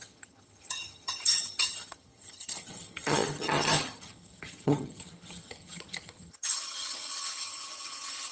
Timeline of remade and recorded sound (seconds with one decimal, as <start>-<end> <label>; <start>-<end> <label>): 0.0-8.3 remade